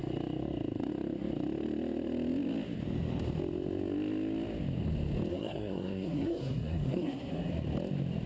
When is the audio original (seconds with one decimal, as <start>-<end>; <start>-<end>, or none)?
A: 0.0-5.3; 7.5-8.3